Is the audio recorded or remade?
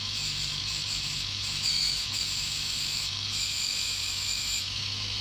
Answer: remade